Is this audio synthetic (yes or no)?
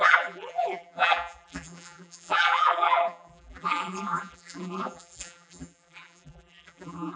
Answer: yes